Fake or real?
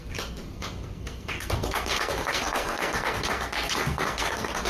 fake